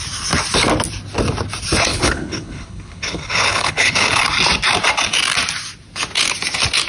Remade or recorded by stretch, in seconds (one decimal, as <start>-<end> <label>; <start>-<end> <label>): 0.0-1.9 recorded; 1.9-4.2 remade; 4.2-6.9 recorded